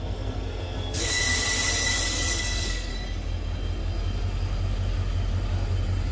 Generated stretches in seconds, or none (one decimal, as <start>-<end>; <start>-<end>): 0.0-1.2; 2.3-2.9